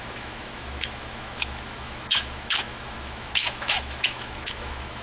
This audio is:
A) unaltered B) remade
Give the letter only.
B